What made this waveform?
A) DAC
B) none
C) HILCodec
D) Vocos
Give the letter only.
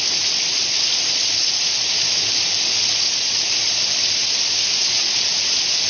B